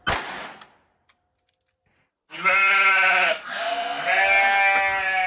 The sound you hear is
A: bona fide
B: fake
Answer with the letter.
A